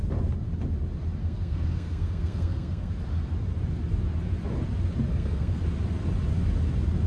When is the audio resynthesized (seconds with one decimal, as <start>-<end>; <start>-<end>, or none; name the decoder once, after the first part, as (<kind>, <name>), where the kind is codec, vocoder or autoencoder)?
1.2-2.9 (codec, SNAC); 5.1-5.6